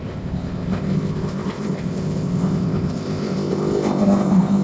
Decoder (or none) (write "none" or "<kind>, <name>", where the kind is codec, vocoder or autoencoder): codec, ZipCodec